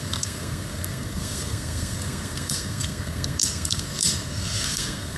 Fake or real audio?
fake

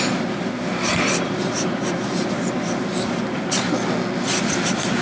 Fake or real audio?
real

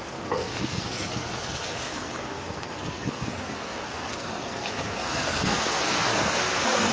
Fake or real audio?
fake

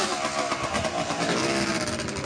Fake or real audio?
real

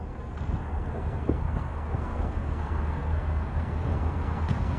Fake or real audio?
fake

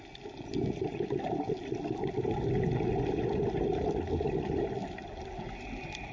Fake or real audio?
real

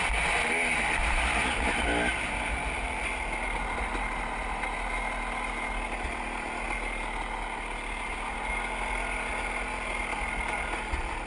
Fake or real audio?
real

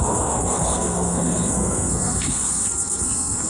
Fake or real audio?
fake